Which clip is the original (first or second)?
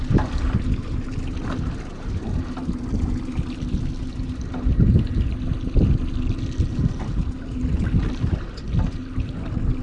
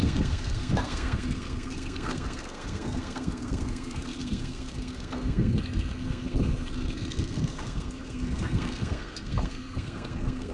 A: first